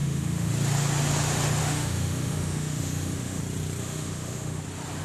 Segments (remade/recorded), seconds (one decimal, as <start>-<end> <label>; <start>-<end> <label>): 0.0-0.5 remade; 0.5-1.6 recorded; 1.6-3.4 remade; 3.4-3.8 recorded; 3.8-4.6 remade; 4.6-5.0 recorded